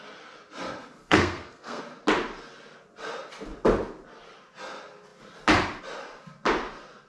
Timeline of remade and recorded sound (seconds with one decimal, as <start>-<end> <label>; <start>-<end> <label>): 0.0-1.0 recorded; 1.0-1.8 remade; 1.8-7.1 recorded